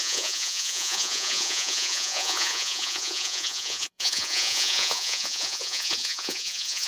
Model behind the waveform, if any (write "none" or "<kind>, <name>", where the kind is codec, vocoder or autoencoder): vocoder, Vocos